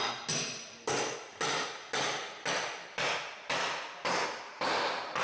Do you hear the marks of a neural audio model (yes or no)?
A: no